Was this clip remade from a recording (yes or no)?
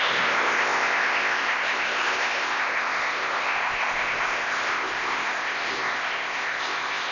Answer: yes